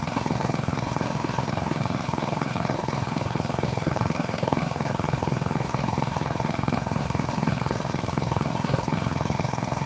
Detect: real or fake fake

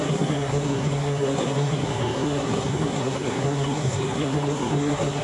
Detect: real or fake fake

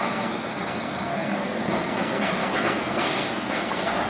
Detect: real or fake fake